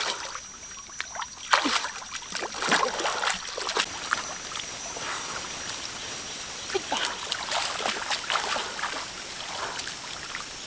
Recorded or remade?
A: recorded